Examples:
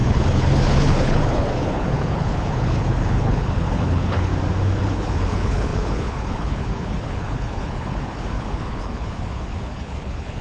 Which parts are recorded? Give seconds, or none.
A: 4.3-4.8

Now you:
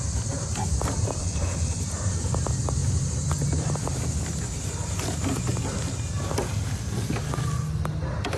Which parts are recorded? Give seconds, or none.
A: 0.0-1.2; 1.8-8.4

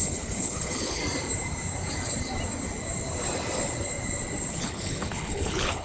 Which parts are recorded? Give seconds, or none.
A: 1.0-4.5

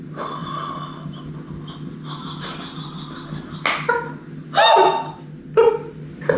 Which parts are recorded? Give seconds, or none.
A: 0.0-6.4

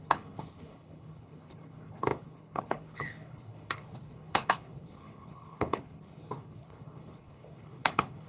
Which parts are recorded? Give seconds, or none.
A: none

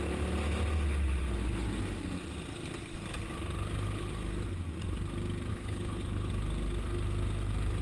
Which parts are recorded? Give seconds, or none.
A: 0.0-5.5; 6.3-7.8

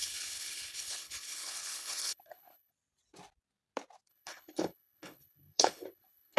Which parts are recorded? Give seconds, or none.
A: 2.7-4.1

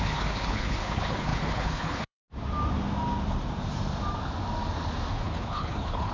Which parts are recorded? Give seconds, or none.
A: 2.2-5.1